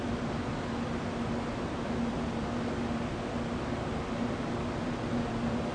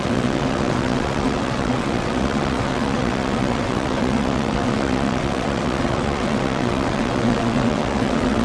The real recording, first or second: first